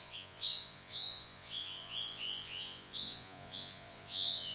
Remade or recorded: remade